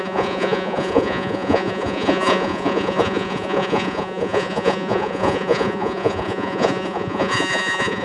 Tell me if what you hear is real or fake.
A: fake